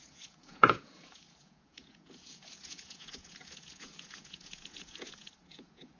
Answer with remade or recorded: remade